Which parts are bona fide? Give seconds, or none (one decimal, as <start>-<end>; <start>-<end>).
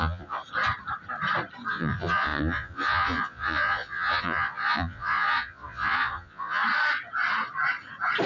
0.4-1.7; 6.6-8.3